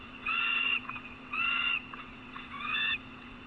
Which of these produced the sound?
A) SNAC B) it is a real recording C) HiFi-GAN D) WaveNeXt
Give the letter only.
D